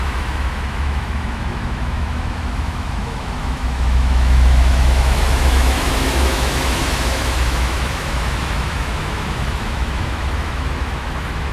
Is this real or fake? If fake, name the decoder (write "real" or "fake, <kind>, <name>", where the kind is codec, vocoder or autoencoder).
fake, autoencoder, DAC-VAE